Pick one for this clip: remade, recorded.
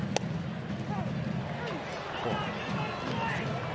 recorded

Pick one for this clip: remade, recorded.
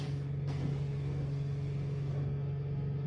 remade